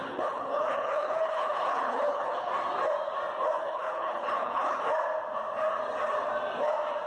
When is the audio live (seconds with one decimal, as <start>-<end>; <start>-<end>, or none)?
2.5-3.6; 4.8-7.1